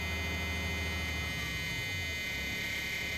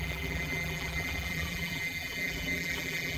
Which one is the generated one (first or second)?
second